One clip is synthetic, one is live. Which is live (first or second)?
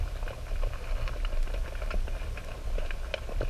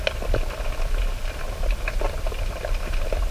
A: first